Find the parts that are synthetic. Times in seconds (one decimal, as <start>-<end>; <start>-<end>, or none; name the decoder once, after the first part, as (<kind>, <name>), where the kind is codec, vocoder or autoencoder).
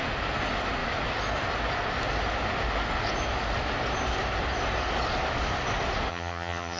6.1-6.8 (vocoder, HiFi-GAN)